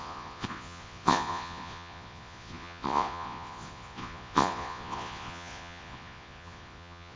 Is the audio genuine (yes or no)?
no